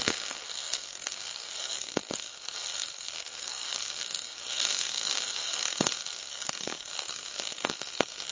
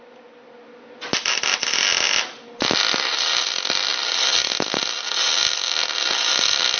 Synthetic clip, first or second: first